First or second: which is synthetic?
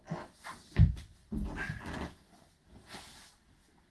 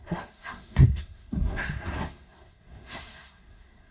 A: second